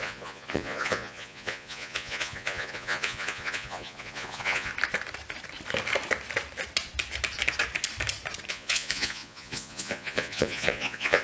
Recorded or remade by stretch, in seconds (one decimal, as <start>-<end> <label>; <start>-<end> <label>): 0.0-4.7 remade; 4.7-8.5 recorded; 8.5-11.2 remade